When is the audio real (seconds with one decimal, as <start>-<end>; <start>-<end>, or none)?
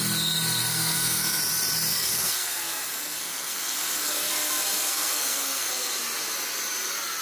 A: 0.0-0.7; 1.4-1.9; 6.0-7.2